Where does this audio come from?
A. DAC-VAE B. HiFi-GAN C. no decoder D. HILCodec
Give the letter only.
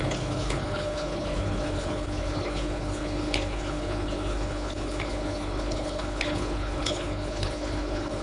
D